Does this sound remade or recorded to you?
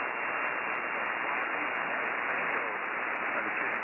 recorded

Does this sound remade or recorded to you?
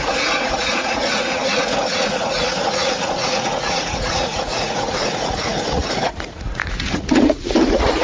remade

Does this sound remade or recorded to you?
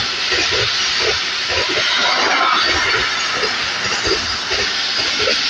recorded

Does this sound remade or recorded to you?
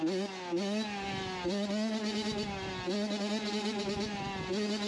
recorded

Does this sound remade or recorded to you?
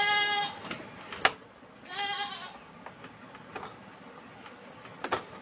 recorded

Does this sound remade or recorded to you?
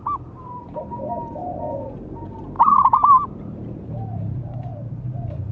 remade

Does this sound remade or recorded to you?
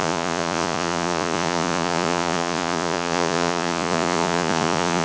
remade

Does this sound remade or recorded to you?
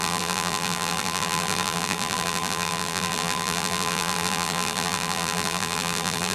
remade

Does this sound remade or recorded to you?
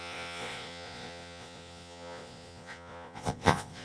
remade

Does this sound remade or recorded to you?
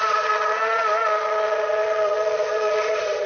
remade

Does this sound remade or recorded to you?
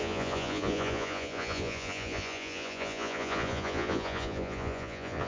remade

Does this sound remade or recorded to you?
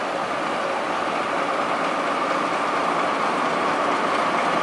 recorded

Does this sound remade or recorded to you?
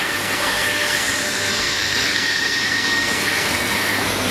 remade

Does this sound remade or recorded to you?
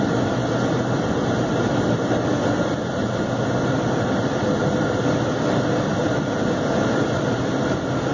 recorded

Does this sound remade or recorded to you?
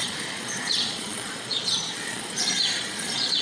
remade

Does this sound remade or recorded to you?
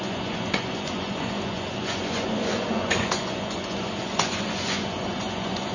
remade